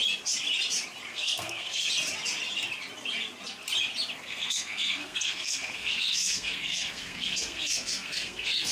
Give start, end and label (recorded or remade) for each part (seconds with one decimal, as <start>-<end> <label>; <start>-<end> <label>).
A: 0.0-1.1 recorded; 1.1-1.9 remade; 1.9-4.1 recorded; 4.1-8.7 remade